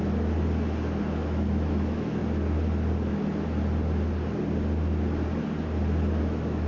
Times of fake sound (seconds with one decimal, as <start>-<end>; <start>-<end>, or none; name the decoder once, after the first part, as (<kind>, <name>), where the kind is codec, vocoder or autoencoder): 1.0-2.2 (autoencoder, DAC-VAE); 6.2-6.7